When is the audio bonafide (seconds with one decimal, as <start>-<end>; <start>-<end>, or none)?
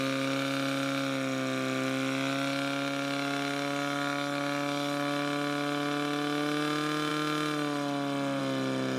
0.0-9.0